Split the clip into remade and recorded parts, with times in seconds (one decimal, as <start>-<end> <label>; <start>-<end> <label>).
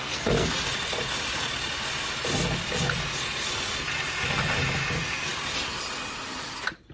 0.0-0.5 remade; 0.5-6.9 recorded